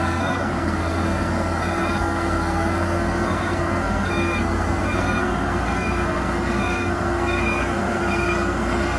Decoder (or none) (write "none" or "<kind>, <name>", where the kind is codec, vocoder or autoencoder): codec, SNAC